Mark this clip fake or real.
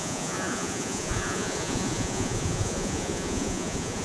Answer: fake